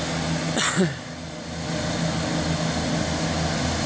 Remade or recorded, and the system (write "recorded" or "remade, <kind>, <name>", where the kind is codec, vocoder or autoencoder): recorded